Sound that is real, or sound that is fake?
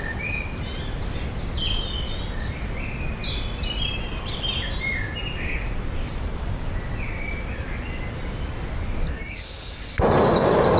real